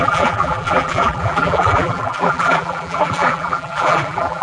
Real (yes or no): no